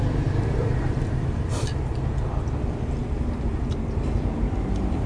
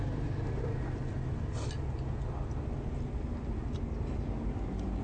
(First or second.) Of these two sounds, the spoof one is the first